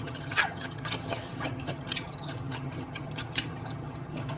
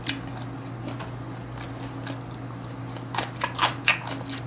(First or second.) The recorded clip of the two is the second